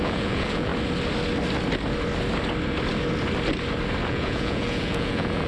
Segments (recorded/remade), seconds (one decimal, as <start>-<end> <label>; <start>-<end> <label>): 0.0-0.7 remade; 0.7-4.0 recorded; 4.0-5.5 remade